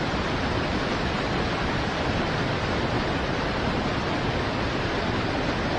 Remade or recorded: recorded